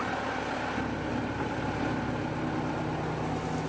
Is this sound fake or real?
fake